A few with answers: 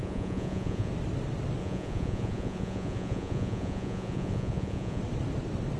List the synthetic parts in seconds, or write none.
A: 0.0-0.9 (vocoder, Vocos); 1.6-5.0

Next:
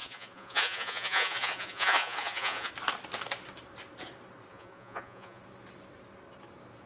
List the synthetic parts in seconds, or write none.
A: 0.0-2.7 (vocoder, Vocos); 4.5-5.4

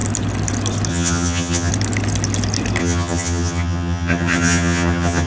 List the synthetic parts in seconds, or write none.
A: 0.9-1.7 (vocoder, HiFi-GAN); 2.8-5.3

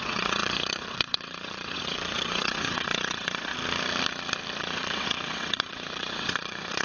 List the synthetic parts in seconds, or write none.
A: 0.0-3.5 (vocoder, WaveNeXt); 4.6-6.8

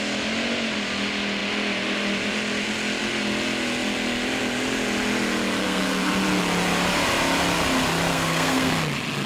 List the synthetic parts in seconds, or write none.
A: 5.6-6.1 (codec, SNAC); 8.1-8.7

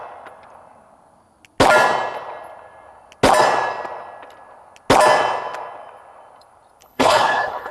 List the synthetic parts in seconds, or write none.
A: 6.8-7.7 (codec, HILCodec)